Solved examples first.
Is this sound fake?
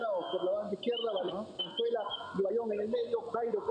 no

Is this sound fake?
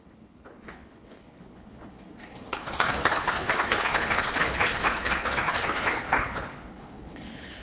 yes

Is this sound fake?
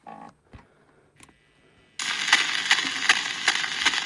no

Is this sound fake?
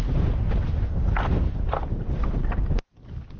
no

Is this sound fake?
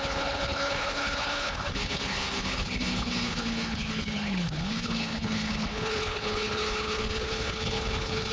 yes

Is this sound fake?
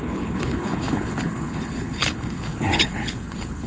yes